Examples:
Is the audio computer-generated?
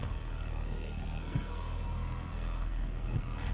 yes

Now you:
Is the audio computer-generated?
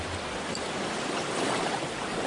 no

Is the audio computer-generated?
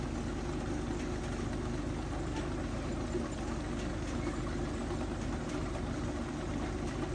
no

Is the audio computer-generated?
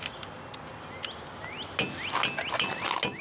no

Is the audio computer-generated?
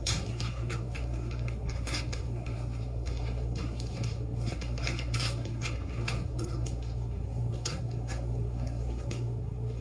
yes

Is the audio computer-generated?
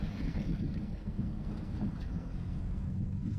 yes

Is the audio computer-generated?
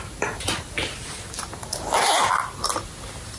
no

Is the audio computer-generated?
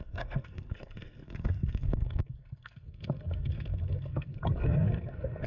yes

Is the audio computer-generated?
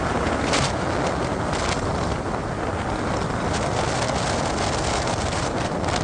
no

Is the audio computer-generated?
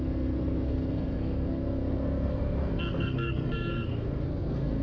yes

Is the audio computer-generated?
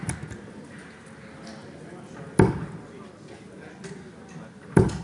no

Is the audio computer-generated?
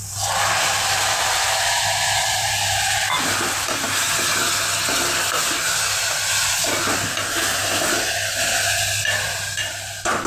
no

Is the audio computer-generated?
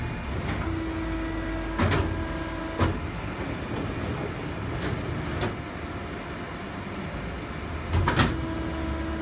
no